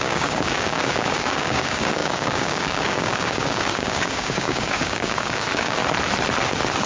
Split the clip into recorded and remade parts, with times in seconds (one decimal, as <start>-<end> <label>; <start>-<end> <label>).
0.0-5.8 remade; 5.8-6.9 recorded